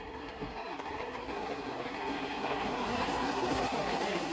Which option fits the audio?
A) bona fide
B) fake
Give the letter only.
B